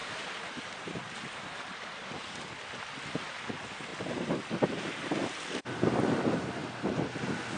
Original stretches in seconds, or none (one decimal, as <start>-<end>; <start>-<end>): 2.7-3.9; 4.4-7.6